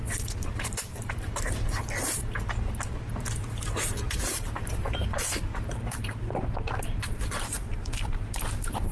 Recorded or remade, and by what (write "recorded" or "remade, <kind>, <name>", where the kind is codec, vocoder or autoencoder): remade, vocoder, BigVGAN v2